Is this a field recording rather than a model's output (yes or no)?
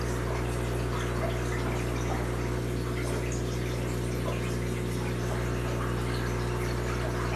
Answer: yes